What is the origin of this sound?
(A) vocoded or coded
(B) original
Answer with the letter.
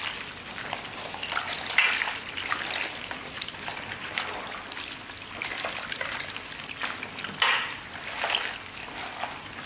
B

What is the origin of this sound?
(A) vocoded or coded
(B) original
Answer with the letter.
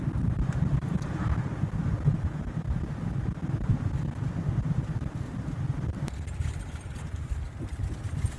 B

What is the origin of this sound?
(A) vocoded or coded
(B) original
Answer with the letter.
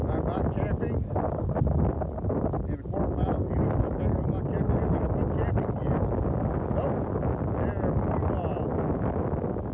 B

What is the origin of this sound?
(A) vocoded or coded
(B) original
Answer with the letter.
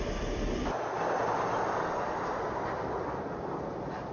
B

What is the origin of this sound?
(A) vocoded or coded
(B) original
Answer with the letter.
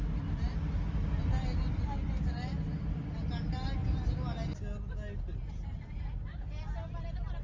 B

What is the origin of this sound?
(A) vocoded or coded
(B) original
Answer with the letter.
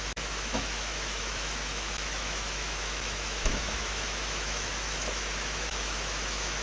A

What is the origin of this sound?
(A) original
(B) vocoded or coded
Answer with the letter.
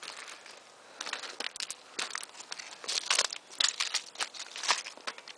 A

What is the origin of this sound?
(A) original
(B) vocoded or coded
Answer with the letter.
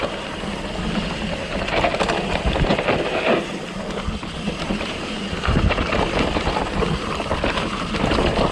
A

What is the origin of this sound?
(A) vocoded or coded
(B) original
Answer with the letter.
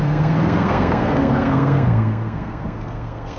A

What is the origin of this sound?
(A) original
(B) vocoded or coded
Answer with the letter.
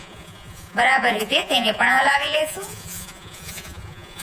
B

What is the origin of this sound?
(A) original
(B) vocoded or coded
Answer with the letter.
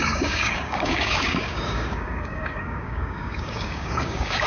B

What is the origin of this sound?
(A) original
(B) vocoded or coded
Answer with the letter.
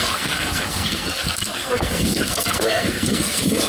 B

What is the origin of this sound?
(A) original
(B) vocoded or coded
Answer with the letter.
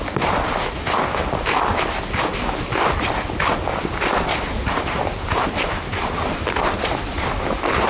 A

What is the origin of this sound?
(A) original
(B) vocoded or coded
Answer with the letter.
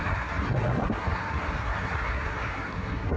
B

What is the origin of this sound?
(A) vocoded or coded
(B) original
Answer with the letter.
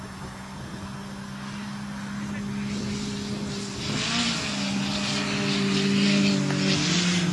B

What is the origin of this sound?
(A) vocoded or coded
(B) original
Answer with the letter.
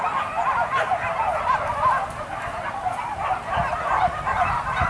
B